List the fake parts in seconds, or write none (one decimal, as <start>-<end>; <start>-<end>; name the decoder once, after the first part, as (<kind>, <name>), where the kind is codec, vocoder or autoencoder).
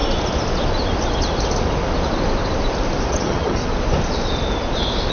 3.1-3.6 (vocoder, HiFi-GAN)